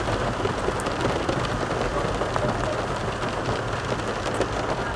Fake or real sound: real